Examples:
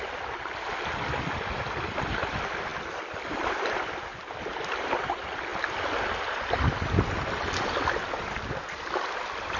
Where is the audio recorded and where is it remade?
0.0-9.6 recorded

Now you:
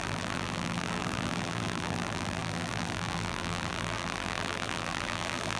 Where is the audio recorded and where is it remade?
0.0-5.6 remade

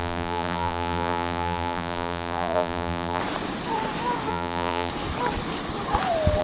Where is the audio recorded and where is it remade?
0.0-3.2 remade; 3.2-4.3 recorded; 4.3-4.9 remade; 4.9-6.4 recorded